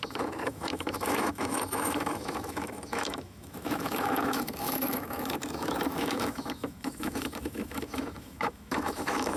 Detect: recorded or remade remade